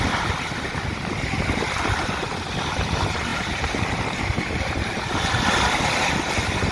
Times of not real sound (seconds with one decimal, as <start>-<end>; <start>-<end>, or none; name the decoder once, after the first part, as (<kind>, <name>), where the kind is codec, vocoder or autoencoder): 3.3-5.0 (vocoder, BigVGAN v2)